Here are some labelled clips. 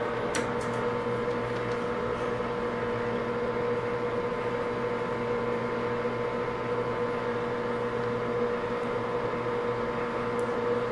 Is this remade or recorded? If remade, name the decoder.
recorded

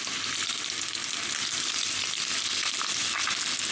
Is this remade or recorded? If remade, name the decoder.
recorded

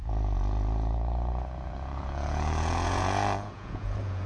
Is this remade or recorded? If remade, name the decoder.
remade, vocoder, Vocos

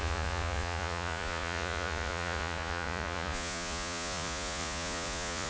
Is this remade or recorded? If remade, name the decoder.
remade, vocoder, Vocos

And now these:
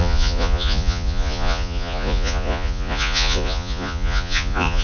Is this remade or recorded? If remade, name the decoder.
remade, vocoder, Vocos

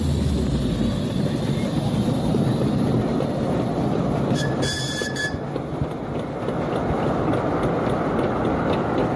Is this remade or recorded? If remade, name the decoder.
recorded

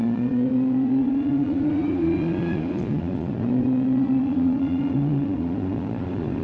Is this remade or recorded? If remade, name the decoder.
remade, vocoder, Vocos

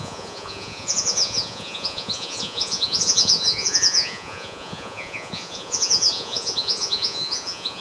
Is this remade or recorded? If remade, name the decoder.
remade, vocoder, Vocos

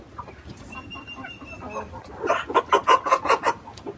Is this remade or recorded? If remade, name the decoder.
recorded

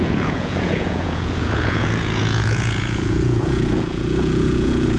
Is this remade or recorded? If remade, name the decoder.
remade, vocoder, Vocos